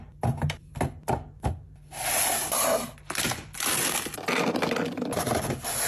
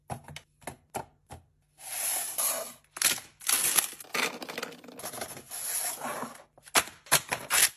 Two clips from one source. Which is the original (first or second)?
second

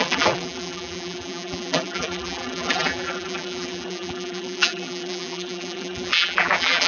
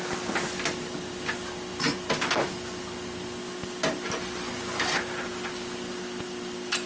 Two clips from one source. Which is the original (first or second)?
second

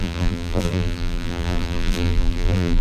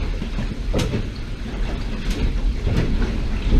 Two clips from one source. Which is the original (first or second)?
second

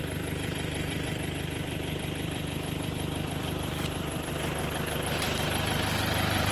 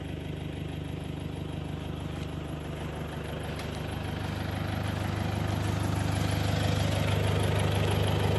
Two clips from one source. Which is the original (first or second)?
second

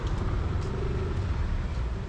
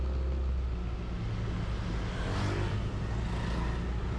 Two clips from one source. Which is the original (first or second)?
second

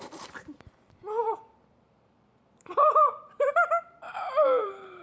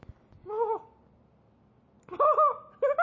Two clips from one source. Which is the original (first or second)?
second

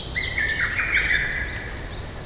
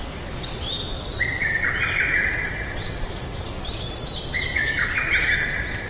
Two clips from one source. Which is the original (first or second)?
first